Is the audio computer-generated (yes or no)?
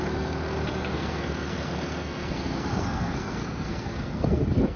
yes